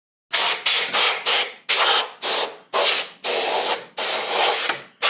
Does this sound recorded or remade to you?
recorded